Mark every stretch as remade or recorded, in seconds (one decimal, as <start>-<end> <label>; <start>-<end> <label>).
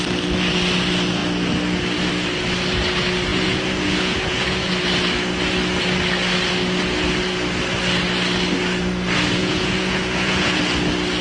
0.0-3.3 recorded; 3.3-4.7 remade; 4.7-9.4 recorded; 9.4-10.6 remade; 10.6-11.2 recorded